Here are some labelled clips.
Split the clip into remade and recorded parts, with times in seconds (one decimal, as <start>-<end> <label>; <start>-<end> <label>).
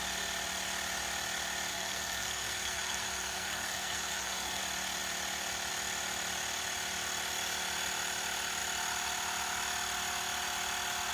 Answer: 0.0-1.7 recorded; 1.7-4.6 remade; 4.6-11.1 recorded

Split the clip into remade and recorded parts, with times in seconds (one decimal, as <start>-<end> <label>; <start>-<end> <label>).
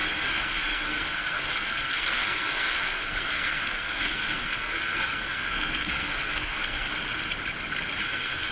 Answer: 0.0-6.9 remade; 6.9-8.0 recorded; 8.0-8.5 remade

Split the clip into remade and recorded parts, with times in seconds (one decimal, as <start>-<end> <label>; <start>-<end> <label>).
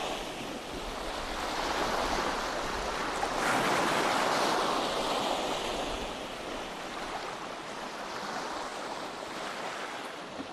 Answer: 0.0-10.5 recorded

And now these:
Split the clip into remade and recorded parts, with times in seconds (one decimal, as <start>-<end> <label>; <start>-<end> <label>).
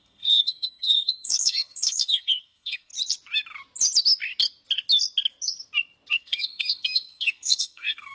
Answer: 0.0-2.9 remade; 2.9-6.1 recorded; 6.1-8.1 remade